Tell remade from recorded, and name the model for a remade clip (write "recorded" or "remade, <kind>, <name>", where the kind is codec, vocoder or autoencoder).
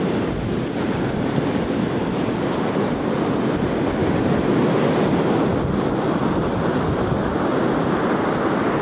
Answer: recorded